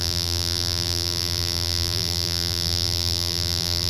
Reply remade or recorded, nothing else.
remade